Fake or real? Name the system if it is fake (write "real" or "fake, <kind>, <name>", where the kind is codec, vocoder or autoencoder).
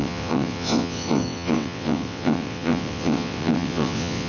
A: fake, vocoder, WaveNeXt